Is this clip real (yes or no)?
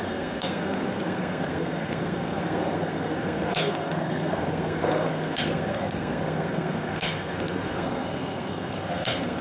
no